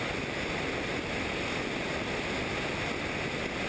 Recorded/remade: recorded